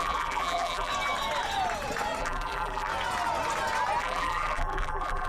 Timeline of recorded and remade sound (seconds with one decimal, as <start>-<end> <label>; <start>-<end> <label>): 0.0-0.9 remade; 0.9-2.2 recorded; 2.2-2.9 remade; 2.9-4.0 recorded; 4.0-5.3 remade